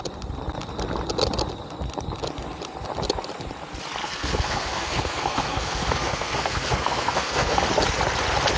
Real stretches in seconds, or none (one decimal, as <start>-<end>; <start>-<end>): 0.0-4.0; 7.6-8.6